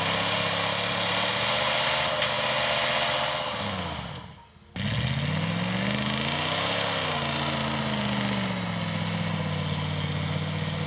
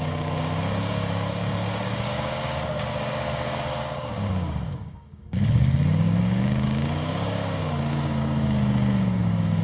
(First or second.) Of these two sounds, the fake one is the second